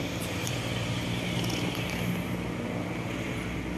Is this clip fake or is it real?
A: real